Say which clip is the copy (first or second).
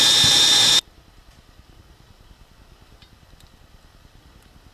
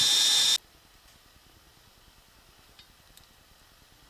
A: first